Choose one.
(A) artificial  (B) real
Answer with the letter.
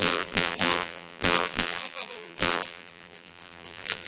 A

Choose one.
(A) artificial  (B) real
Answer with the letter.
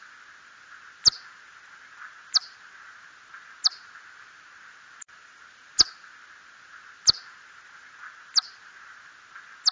B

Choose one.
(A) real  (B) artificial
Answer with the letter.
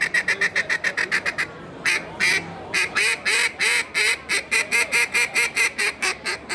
A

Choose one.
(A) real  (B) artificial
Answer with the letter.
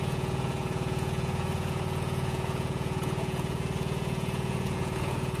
B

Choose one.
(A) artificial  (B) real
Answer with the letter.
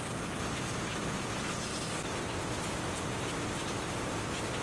B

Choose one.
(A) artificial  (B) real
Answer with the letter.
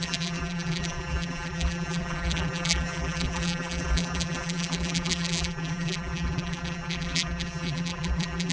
A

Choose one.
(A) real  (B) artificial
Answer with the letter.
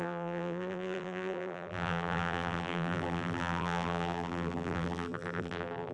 B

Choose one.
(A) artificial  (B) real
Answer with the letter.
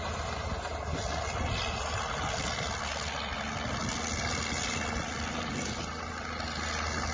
B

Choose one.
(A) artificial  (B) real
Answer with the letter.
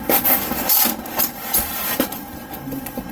A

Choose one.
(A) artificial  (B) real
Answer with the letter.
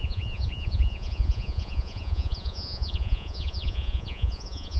A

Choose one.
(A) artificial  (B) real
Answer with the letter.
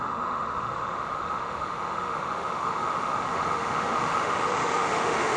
A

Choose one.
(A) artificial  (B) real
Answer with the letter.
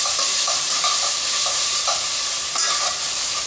A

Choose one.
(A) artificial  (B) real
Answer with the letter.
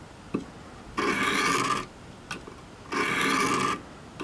B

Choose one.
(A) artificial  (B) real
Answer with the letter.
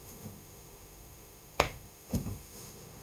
A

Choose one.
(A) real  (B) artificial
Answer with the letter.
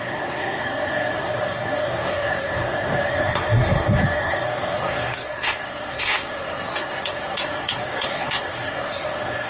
B